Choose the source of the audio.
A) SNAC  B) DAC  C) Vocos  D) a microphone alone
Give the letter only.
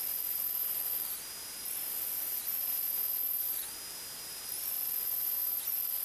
D